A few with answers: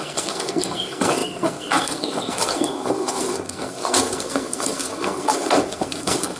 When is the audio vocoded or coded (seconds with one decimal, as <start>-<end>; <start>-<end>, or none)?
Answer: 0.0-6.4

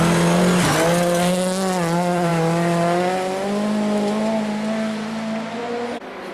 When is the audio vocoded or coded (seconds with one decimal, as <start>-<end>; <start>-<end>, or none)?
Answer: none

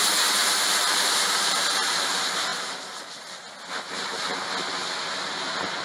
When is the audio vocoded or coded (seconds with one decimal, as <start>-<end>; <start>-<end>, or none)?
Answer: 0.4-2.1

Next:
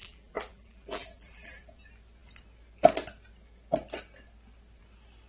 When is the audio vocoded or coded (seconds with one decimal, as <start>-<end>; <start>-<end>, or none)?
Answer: 0.0-1.8

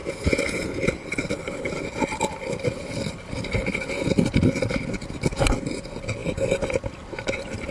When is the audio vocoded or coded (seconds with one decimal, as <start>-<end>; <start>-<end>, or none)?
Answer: 0.0-0.9